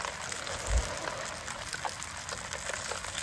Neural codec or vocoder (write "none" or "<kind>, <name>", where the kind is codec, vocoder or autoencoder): none